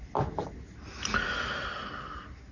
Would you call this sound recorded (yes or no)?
yes